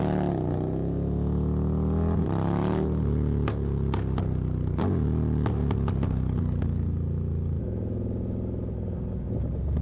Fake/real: real